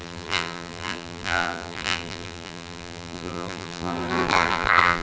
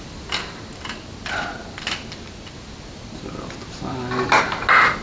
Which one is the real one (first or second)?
second